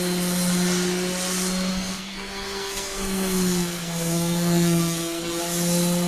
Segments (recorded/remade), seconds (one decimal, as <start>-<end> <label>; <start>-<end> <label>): 0.0-1.7 recorded; 1.7-5.4 remade; 5.4-6.1 recorded